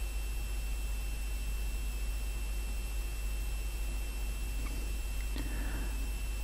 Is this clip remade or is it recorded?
recorded